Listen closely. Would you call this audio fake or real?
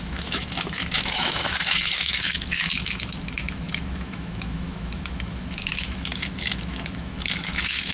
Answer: fake